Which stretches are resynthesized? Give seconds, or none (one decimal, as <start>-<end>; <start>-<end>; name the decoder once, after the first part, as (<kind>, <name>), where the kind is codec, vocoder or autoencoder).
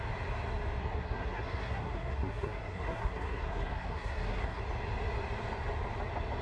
0.8-4.6 (codec, SNAC)